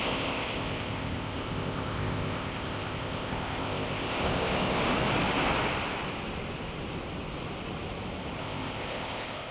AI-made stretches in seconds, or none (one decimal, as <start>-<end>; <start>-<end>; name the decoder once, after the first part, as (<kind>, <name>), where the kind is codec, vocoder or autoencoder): 0.0-4.8 (codec, ZipCodec); 8.4-9.5